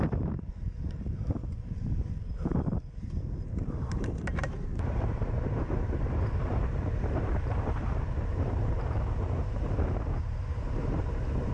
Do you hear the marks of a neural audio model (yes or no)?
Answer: yes